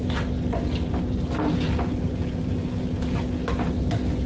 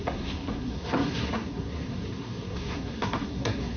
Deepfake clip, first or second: second